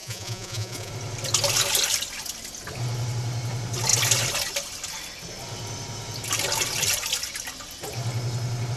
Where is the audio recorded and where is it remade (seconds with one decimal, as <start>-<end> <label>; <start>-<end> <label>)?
0.0-0.9 remade; 0.9-8.8 recorded